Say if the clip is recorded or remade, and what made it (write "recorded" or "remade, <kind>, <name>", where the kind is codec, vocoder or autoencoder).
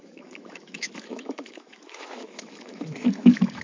remade, autoencoder, DAC-VAE